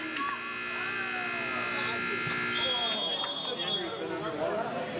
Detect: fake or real real